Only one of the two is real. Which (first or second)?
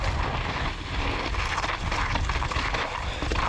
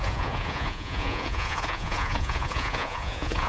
first